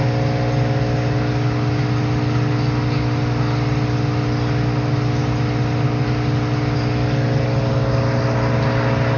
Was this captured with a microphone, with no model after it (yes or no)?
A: yes